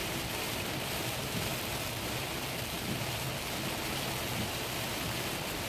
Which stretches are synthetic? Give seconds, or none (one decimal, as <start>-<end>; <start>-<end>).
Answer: 0.0-1.5; 4.9-5.7